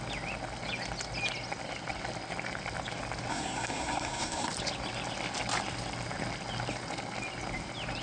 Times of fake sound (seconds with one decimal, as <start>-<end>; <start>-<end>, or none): 3.3-4.5